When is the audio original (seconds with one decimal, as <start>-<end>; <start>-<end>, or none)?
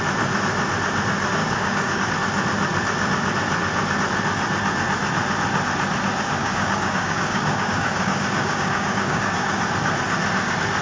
0.0-1.4; 2.1-6.4; 9.6-10.8